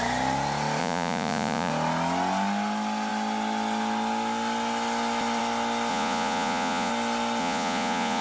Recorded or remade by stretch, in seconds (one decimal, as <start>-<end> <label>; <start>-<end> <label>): 0.0-0.8 recorded; 0.8-1.7 remade; 1.7-5.9 recorded; 5.9-6.9 remade; 6.9-7.4 recorded; 7.4-8.2 remade

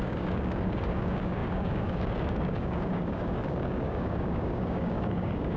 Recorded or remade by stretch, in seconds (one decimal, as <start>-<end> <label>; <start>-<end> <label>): 0.0-5.6 remade

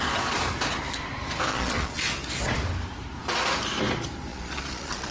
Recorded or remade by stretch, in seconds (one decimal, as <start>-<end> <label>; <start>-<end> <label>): 0.0-1.5 recorded; 1.5-2.0 remade; 2.0-4.3 recorded; 4.3-5.1 remade

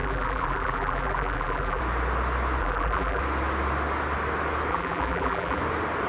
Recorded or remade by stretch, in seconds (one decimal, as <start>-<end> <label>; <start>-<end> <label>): 0.0-1.8 remade; 1.8-2.6 recorded; 2.6-3.2 remade; 3.2-4.7 recorded; 4.7-5.6 remade; 5.6-6.1 recorded

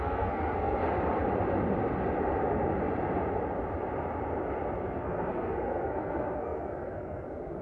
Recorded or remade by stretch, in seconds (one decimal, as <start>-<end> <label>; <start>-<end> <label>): 0.0-0.8 remade; 0.8-4.8 recorded; 4.8-7.6 remade

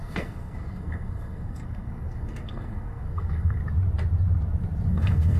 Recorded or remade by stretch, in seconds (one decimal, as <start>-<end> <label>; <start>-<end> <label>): 0.0-3.6 remade; 3.6-4.9 recorded; 4.9-5.4 remade

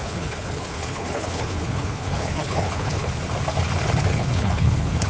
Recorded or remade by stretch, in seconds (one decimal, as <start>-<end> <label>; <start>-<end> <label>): 0.0-3.1 remade; 3.1-4.1 recorded; 4.1-5.1 remade

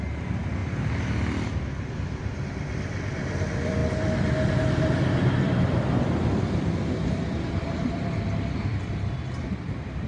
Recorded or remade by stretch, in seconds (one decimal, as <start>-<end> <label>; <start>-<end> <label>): 0.0-3.8 remade; 3.8-4.6 recorded; 4.6-10.1 remade